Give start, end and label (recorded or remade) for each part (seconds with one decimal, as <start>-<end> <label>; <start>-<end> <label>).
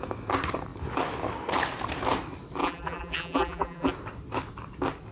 0.0-2.6 recorded; 2.6-3.9 remade; 3.9-5.1 recorded